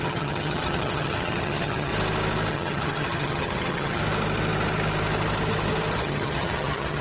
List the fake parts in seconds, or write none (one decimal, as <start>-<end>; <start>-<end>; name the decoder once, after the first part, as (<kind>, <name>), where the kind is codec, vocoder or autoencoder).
0.0-1.9 (vocoder, HiFi-GAN); 2.5-4.0; 6.0-7.0